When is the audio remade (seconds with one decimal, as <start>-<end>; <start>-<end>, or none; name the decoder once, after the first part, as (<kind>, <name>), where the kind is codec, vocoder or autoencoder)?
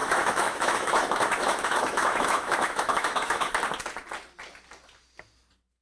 0.0-3.5 (autoencoder, DAC-VAE)